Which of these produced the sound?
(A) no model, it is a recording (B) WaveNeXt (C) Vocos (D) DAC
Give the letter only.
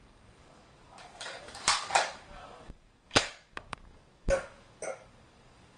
D